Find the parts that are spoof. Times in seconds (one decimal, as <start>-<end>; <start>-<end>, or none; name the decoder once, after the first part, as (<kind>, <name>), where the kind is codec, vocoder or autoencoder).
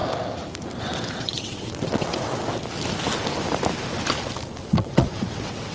0.8-2.4 (vocoder, WaveNeXt); 4.7-5.7